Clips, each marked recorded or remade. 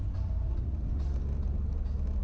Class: recorded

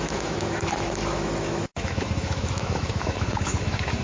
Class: remade